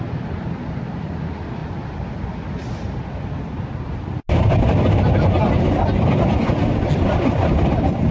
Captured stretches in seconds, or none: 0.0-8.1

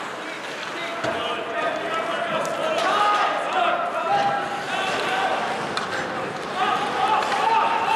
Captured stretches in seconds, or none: 0.0-8.0

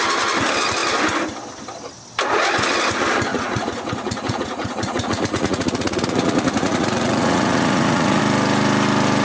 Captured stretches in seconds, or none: 0.0-3.3; 8.2-9.2

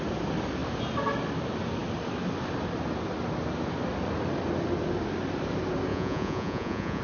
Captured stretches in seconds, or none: 0.0-5.9

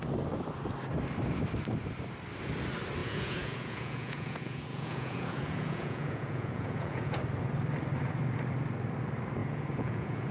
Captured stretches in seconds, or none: 0.0-3.0; 7.2-9.4

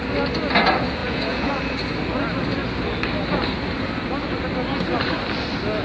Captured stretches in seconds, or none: 0.0-1.0; 1.5-5.8

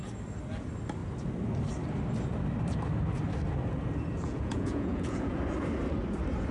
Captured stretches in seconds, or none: 0.0-4.2; 5.4-6.5